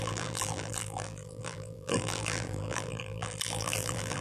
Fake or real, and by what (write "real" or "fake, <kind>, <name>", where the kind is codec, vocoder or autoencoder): fake, vocoder, BigVGAN v2